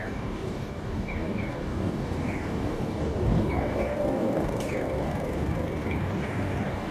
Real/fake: fake